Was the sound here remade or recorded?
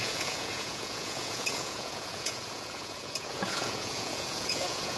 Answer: remade